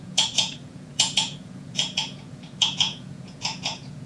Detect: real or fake fake